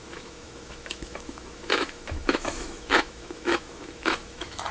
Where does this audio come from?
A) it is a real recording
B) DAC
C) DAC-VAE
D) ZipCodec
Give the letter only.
C